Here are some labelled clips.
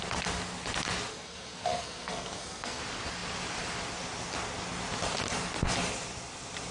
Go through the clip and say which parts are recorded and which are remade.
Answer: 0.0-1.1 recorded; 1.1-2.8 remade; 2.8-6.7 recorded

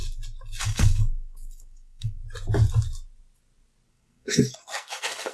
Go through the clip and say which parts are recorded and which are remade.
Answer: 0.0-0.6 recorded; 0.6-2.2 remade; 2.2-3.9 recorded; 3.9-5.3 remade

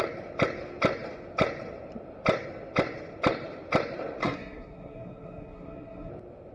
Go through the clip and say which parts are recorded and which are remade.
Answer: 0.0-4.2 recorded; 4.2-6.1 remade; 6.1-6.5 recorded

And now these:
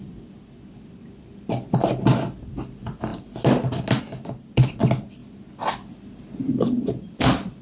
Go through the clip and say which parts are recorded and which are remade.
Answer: 0.0-7.6 recorded

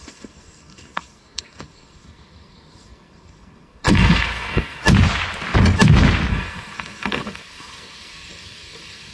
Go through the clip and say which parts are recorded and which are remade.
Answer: 0.0-4.8 remade; 4.8-6.3 recorded; 6.3-9.1 remade